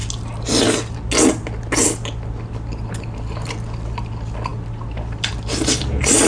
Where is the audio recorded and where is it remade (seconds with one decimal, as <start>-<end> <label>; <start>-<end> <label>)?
0.0-6.3 recorded